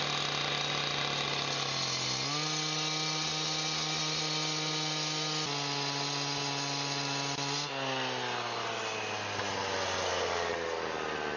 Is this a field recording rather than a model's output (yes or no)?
yes